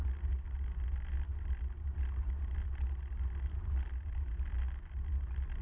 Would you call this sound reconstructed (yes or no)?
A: no